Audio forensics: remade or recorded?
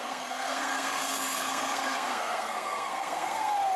remade